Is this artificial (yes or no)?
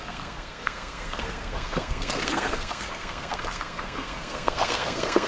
yes